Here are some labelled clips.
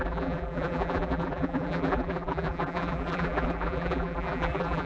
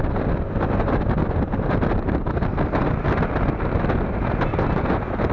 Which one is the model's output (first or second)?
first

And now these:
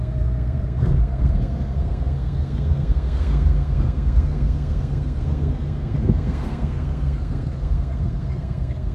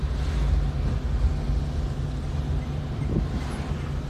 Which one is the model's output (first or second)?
first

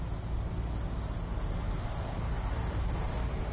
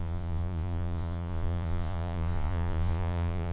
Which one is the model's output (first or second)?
second